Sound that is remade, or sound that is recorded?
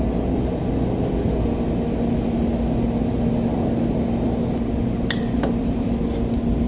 recorded